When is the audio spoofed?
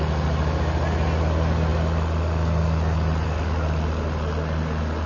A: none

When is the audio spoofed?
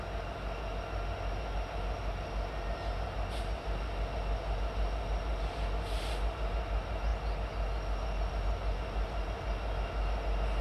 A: none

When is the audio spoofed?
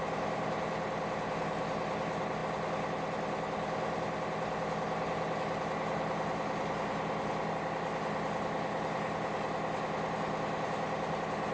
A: none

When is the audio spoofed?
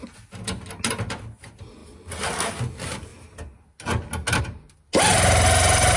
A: none